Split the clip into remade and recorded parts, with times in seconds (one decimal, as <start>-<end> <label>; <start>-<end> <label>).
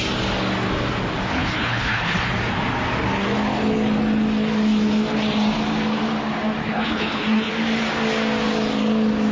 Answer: 0.0-1.3 recorded; 1.3-2.3 remade; 2.3-6.6 recorded; 6.6-7.5 remade; 7.5-9.3 recorded